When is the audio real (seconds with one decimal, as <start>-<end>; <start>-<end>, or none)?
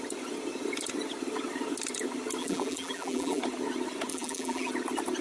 0.0-2.4; 3.4-4.1; 4.7-5.2